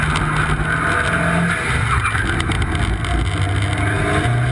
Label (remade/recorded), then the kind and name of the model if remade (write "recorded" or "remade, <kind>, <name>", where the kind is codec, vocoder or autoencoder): recorded